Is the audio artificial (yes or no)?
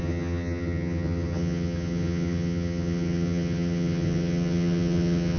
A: yes